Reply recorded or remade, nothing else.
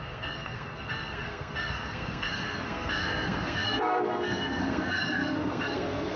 remade